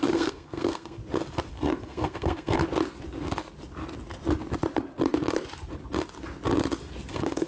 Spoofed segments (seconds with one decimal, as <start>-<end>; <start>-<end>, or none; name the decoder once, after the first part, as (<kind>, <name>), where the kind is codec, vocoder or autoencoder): 0.0-1.0 (codec, SNAC); 1.5-2.6; 7.1-7.5